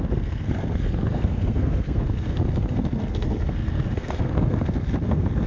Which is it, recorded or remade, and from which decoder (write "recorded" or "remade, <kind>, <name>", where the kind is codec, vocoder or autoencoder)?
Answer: remade, codec, SNAC